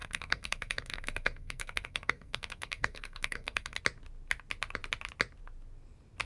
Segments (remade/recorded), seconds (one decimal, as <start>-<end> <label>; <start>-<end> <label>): 0.0-3.8 remade; 3.8-6.3 recorded